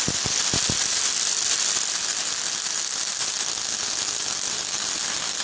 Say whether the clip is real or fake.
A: fake